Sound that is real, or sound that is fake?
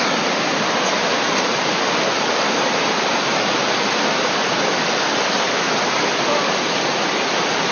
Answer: real